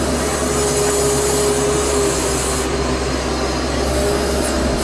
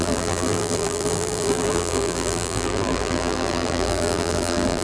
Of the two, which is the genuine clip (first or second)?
first